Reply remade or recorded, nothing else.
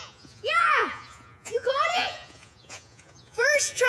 remade